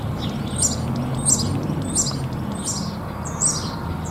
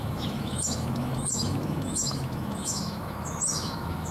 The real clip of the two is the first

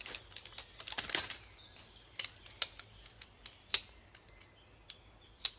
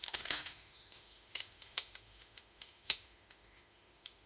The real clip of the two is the first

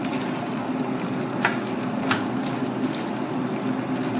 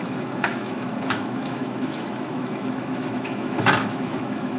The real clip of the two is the first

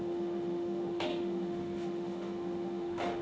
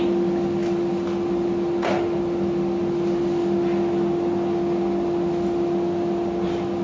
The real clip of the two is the second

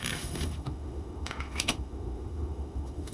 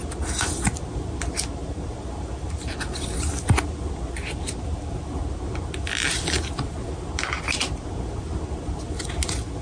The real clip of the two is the second